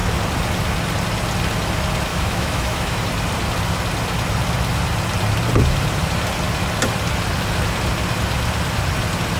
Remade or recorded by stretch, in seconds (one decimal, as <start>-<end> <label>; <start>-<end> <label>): 0.0-2.1 recorded; 2.1-3.0 remade; 3.0-9.4 recorded